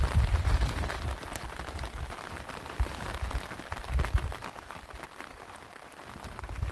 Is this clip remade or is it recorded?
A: remade